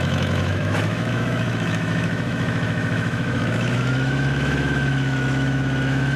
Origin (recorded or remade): remade